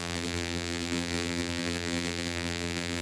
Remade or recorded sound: remade